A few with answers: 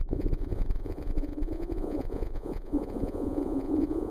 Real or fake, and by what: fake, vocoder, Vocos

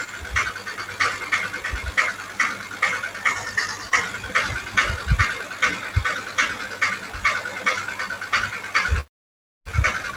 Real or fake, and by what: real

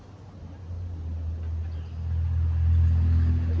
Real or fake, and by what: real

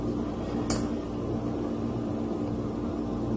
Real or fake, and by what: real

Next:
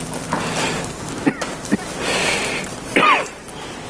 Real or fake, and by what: real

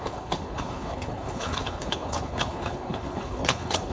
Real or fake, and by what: fake, codec, HILCodec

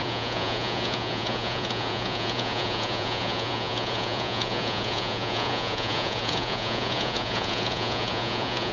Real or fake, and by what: fake, vocoder, Vocos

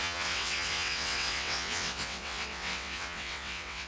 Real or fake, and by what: fake, vocoder, WaveNeXt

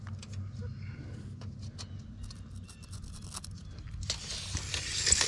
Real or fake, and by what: real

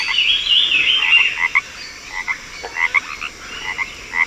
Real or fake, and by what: real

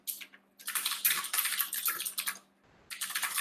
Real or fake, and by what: real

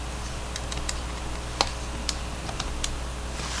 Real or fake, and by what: real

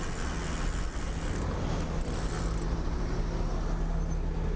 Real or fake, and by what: real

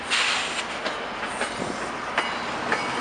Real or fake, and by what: real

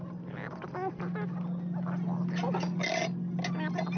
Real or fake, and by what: real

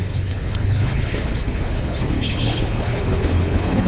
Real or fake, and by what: fake, codec, HILCodec